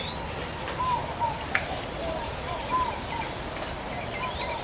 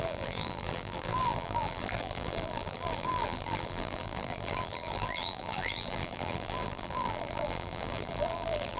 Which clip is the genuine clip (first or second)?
first